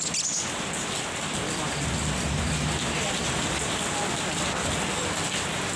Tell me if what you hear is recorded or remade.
recorded